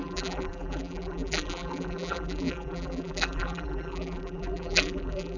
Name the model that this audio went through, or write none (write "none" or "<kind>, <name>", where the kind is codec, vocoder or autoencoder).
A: vocoder, BigVGAN v2